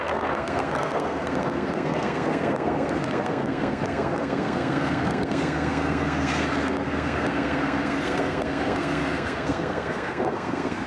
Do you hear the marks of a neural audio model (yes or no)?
yes